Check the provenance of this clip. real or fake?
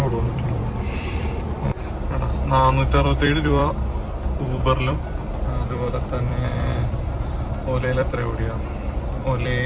fake